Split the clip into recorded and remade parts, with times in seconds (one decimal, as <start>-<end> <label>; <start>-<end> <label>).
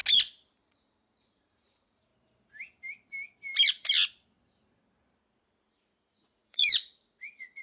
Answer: 0.0-0.5 recorded; 0.5-2.1 remade; 2.1-5.7 recorded; 5.7-7.6 remade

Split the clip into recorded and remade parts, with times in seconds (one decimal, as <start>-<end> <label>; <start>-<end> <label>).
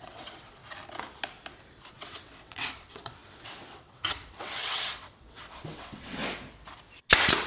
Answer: 0.0-0.6 remade; 0.6-1.9 recorded; 1.9-6.2 remade; 6.2-7.5 recorded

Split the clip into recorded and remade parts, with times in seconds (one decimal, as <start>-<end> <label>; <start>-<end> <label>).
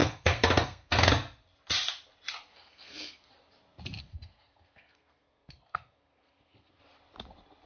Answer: 0.0-1.1 remade; 1.1-2.5 recorded; 2.5-3.3 remade; 3.3-4.0 recorded; 4.0-6.8 remade; 6.8-7.7 recorded